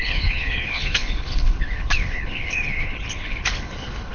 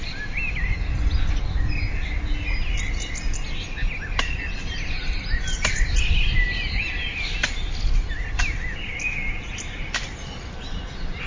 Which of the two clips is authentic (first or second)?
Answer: second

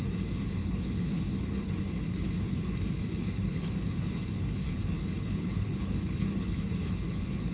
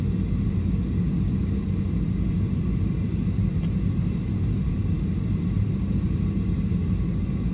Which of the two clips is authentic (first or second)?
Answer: second